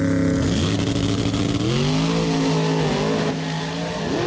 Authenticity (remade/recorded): recorded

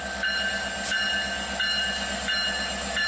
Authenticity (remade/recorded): recorded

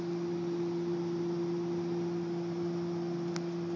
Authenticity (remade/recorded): recorded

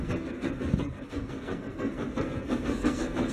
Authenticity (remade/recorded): remade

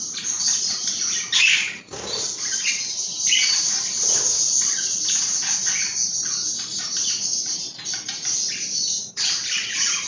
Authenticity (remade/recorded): recorded